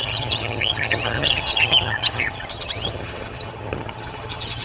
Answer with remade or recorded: remade